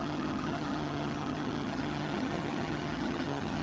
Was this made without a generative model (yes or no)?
no